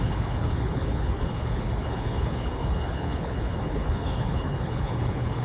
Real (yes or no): no